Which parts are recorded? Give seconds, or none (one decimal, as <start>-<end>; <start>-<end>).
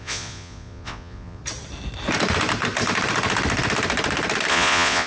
1.4-4.5